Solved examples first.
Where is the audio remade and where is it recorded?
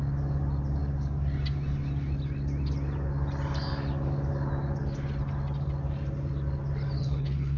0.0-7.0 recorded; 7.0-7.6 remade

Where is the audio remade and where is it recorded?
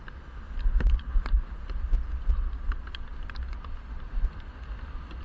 0.0-5.2 recorded